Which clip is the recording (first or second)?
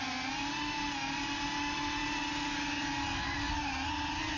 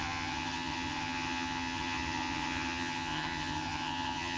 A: first